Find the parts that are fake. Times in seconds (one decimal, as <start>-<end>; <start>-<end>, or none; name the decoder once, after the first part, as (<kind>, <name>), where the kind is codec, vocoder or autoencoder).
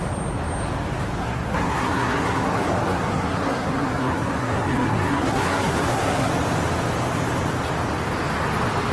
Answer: 1.2-6.3 (codec, SNAC)